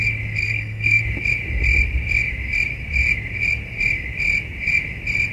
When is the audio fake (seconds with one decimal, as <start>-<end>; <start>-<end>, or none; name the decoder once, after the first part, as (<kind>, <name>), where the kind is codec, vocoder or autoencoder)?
0.4-1.0 (codec, SNAC)

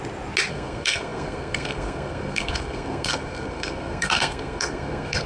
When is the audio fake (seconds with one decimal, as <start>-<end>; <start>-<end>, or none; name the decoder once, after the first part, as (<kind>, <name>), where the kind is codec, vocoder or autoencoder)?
0.5-5.3 (codec, SNAC)

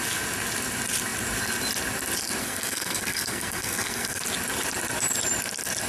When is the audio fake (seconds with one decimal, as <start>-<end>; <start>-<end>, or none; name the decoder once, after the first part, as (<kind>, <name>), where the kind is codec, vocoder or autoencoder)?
2.4-4.2 (codec, SNAC)

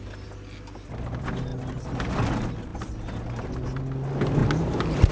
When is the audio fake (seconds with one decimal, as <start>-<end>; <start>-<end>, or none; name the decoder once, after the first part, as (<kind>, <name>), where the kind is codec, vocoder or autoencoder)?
none

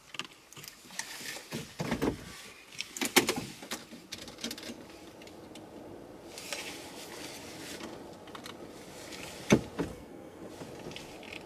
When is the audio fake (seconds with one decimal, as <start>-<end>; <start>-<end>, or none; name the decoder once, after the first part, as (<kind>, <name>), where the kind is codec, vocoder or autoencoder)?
9.9-10.5 (codec, SNAC)

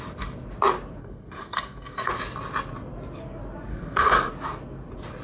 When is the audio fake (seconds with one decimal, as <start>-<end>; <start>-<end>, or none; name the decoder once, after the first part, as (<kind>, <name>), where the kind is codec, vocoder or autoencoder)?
1.0-2.1 (codec, SNAC); 3.7-4.3